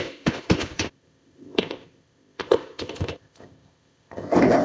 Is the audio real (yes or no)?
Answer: no